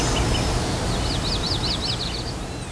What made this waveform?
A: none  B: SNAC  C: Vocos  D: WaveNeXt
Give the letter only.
A